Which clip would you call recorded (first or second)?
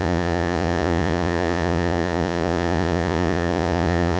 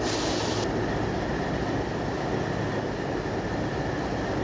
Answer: second